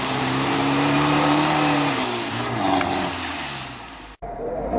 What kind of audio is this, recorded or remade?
remade